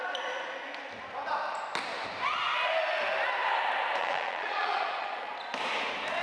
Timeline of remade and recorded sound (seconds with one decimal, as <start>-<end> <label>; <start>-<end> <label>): 0.0-4.0 recorded; 4.0-5.3 remade; 5.3-6.2 recorded

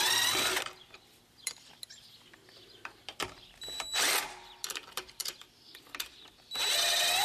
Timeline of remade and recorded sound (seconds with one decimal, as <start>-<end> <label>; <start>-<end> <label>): 0.0-7.2 recorded

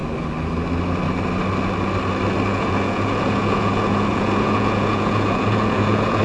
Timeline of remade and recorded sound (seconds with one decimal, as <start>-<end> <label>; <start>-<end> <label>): 0.0-2.5 recorded; 2.5-6.2 remade

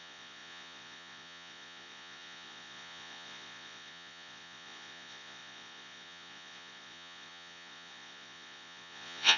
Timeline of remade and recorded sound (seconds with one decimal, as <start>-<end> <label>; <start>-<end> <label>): 0.0-9.4 remade